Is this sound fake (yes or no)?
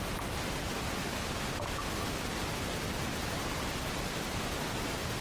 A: no